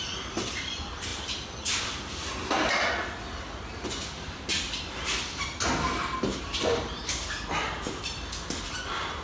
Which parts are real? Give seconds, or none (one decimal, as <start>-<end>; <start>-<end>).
0.0-6.3; 8.3-9.2